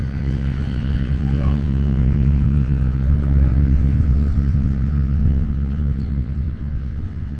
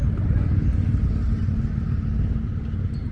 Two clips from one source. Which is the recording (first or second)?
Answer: second